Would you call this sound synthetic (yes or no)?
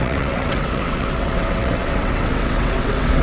yes